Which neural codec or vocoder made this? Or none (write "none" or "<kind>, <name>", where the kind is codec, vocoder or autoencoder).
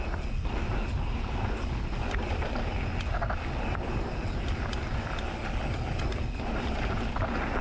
none